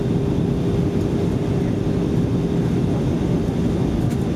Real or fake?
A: real